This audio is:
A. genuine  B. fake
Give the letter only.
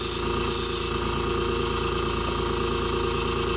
A